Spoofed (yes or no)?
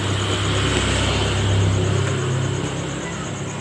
no